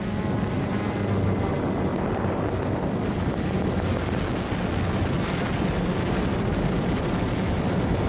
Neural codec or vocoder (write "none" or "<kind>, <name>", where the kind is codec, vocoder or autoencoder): none